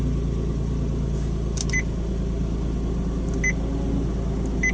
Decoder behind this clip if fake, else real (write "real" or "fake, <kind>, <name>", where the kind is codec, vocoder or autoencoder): real